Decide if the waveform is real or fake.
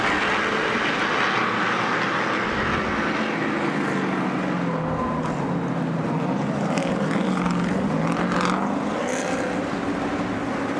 real